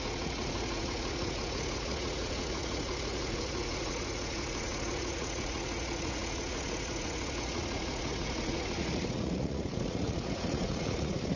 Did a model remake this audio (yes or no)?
yes